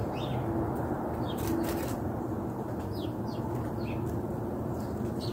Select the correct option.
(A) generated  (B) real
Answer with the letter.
B